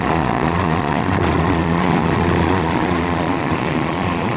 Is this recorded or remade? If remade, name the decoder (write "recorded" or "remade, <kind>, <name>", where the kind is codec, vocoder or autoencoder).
remade, vocoder, Vocos